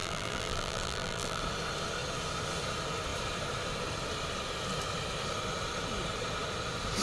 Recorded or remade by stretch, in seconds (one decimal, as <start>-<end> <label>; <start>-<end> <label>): 0.0-1.4 remade; 1.4-7.0 recorded